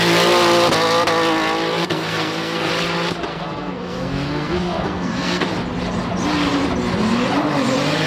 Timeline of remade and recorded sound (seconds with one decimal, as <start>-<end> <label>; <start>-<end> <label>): 0.0-1.8 recorded; 1.8-2.7 remade; 2.7-3.3 recorded; 3.3-5.5 remade; 5.5-8.1 recorded